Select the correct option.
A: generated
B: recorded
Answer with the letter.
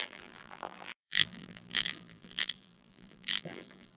A